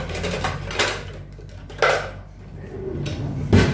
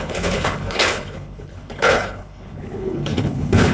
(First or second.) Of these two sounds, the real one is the first